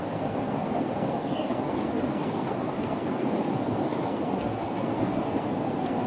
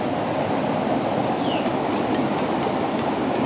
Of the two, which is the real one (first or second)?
second